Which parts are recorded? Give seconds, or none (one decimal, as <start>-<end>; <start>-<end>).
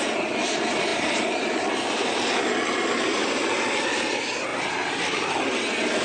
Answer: 0.0-0.9; 2.5-3.2; 3.8-4.5; 5.3-6.0